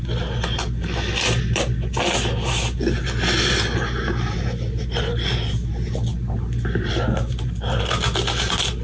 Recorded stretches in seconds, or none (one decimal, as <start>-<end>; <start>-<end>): 0.0-8.8